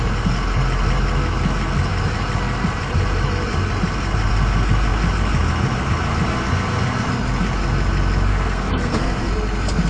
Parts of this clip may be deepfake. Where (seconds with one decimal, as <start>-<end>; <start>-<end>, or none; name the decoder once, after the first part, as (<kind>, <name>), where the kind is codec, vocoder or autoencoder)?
8.3-9.3 (codec, SNAC)